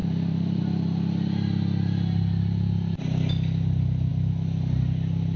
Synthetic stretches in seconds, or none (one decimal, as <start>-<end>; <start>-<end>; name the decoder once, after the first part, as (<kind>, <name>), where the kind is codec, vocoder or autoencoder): 0.0-0.6 (vocoder, BigVGAN v2)